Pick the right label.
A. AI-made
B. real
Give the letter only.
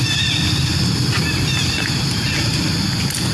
B